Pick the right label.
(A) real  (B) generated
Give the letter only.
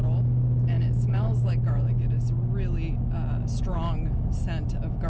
A